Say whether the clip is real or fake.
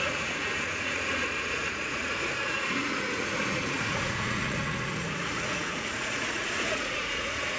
fake